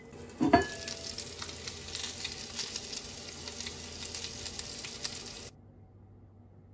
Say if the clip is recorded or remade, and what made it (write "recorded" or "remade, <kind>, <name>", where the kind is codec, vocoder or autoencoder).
recorded